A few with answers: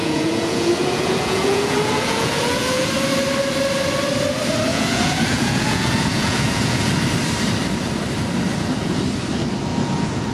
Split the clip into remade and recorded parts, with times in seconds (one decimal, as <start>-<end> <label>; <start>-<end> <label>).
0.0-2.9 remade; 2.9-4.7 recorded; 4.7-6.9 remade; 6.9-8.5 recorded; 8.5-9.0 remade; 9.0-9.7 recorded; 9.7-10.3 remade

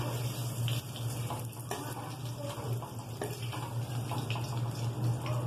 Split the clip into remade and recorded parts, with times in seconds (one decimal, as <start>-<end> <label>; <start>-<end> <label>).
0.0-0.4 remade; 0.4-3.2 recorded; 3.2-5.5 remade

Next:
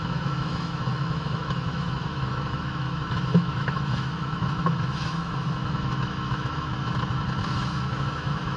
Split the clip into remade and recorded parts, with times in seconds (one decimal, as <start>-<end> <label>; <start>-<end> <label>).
0.0-6.7 remade; 6.7-7.5 recorded; 7.5-8.6 remade